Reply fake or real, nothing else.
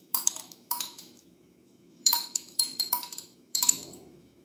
fake